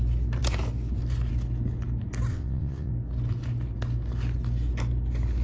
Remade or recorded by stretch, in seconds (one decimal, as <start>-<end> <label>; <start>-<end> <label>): 0.0-2.3 recorded; 2.3-2.9 remade; 2.9-5.4 recorded